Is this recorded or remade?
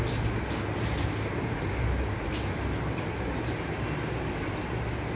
recorded